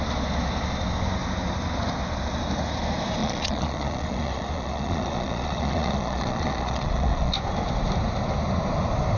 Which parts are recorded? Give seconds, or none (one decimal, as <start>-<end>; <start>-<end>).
0.0-3.2; 7.3-9.2